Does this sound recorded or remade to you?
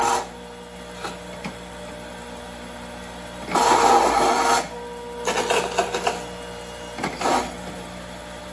recorded